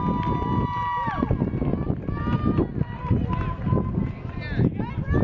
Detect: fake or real real